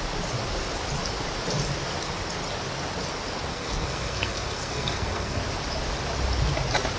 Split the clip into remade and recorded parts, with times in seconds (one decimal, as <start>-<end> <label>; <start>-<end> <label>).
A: 0.0-3.5 recorded; 3.5-5.4 remade; 5.4-7.0 recorded